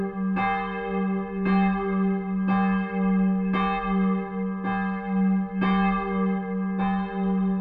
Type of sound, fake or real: real